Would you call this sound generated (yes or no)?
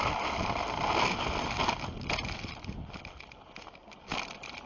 no